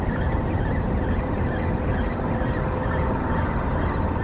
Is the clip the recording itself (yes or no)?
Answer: yes